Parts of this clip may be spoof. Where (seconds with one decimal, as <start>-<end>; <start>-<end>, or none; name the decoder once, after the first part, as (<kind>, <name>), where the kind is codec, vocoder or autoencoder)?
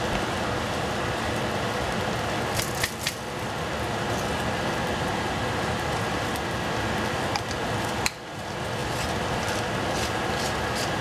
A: none